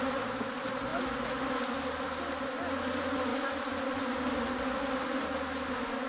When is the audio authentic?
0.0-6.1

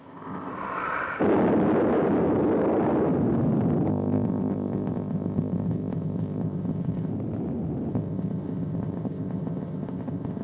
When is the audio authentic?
0.5-3.9; 7.1-7.9

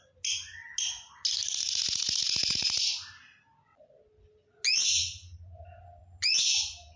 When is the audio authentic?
0.0-7.0

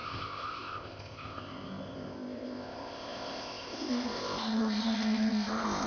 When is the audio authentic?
none

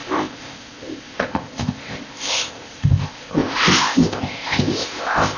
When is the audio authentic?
none